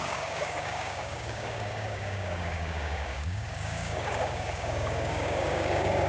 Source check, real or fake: fake